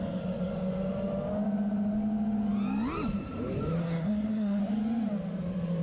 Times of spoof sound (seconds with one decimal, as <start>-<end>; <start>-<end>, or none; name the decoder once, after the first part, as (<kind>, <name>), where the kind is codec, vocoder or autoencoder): 3.8-4.6 (codec, SNAC)